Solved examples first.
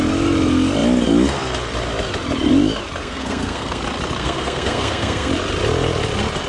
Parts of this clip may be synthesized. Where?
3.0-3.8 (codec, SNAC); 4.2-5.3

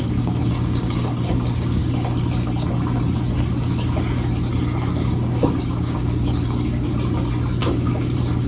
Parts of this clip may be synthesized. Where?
0.0-1.8 (codec, DAC); 4.9-6.9; 7.6-8.5

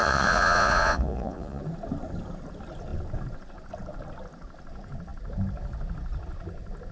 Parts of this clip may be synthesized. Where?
0.0-1.6 (vocoder, Vocos)

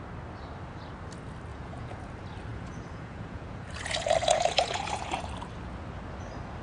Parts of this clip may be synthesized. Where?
1.5-2.1 (vocoder, Vocos); 2.5-5.3